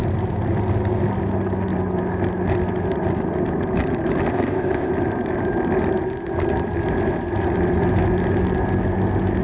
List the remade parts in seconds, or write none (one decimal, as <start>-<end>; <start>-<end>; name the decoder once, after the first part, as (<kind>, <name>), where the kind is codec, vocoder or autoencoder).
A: 4.3-4.9 (codec, ZipCodec)